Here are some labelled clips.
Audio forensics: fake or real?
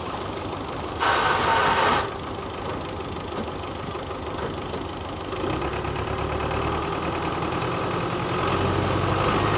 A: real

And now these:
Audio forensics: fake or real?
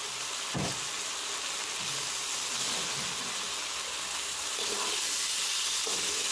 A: real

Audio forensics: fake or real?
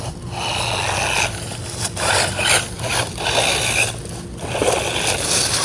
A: real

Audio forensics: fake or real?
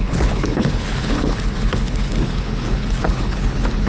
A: fake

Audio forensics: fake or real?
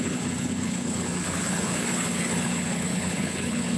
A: fake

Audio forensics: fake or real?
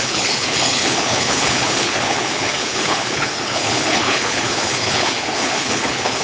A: fake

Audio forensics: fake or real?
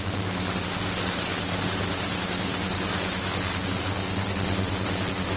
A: real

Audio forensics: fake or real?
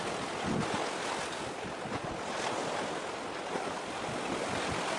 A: real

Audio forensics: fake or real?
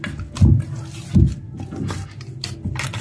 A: real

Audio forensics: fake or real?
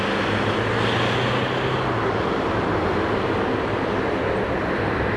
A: real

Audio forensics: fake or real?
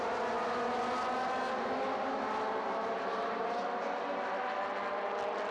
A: real